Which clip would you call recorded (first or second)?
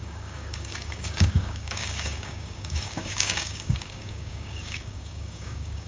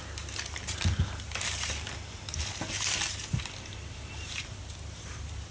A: second